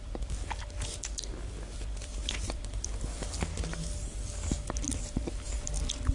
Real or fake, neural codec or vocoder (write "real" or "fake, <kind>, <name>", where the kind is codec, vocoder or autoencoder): real